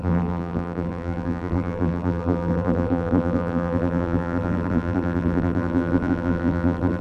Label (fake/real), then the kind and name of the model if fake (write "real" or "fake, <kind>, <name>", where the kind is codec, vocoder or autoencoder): fake, vocoder, BigVGAN v2